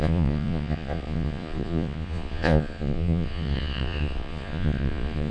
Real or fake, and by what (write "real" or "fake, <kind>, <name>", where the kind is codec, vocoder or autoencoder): fake, vocoder, Vocos